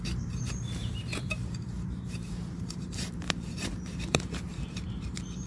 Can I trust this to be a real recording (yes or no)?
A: no